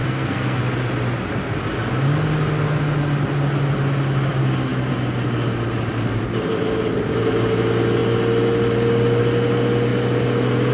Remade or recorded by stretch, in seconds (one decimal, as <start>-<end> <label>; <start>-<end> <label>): 0.0-0.6 remade; 0.6-10.7 recorded